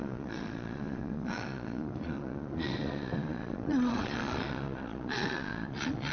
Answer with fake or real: fake